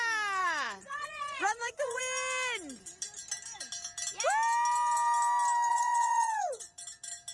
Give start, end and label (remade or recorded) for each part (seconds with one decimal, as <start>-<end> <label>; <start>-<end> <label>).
0.0-0.4 recorded; 0.4-2.0 remade; 2.0-5.7 recorded; 5.7-6.8 remade; 6.8-7.3 recorded

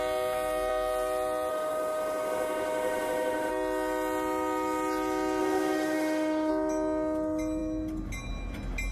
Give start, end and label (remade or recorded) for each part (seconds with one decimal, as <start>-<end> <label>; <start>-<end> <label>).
0.0-1.5 recorded; 1.5-3.5 remade; 3.5-5.4 recorded; 5.4-6.5 remade; 6.5-8.9 recorded

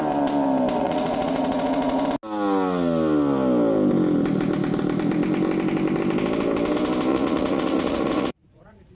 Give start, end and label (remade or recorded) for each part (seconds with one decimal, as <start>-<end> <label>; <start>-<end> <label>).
0.0-0.8 recorded; 0.8-2.0 remade; 2.0-7.1 recorded; 7.1-8.9 remade

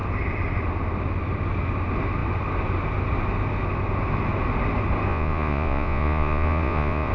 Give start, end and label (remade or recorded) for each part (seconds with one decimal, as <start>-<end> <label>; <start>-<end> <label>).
0.0-5.1 recorded; 5.1-7.1 remade

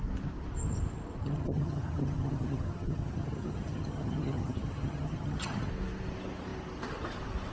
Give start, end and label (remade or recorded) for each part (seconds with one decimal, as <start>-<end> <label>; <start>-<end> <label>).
0.0-1.2 recorded; 1.2-5.7 remade; 5.7-7.5 recorded